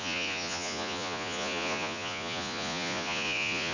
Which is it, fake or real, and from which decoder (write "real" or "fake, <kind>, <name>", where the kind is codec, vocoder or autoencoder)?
fake, vocoder, Vocos